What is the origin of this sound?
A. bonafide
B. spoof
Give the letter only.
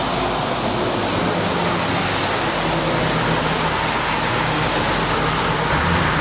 A